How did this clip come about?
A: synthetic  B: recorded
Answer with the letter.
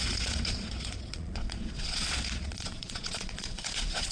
A